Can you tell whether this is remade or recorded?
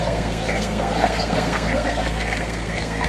remade